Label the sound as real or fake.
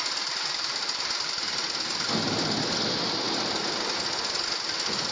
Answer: real